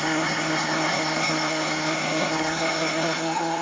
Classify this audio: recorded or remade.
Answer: remade